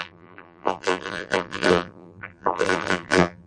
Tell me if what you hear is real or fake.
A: fake